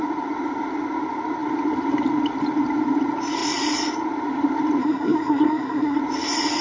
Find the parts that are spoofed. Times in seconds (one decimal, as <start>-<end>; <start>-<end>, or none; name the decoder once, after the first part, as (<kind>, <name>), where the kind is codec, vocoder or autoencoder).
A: 4.8-6.0 (codec, SNAC)